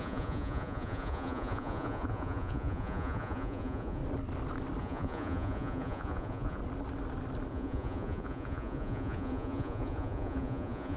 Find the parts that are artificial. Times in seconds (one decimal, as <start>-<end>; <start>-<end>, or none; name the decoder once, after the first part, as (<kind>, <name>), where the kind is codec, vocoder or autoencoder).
0.0-4.0 (vocoder, Vocos); 4.8-6.6; 7.5-11.0